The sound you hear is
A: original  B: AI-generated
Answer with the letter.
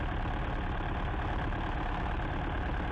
A